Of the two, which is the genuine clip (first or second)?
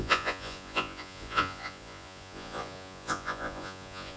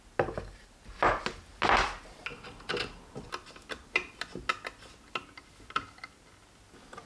second